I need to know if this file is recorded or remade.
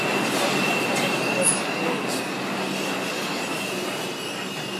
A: recorded